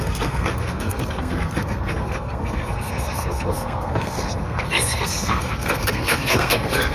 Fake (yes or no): yes